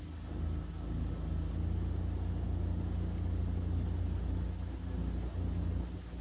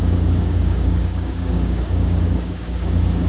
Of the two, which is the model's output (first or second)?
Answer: second